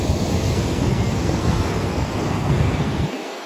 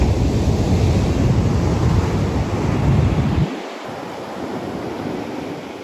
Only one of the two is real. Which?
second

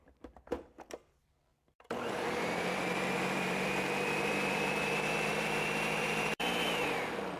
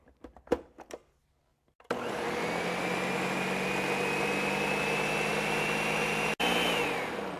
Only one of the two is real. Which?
second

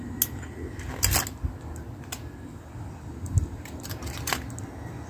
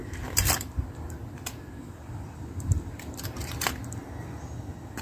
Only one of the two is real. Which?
first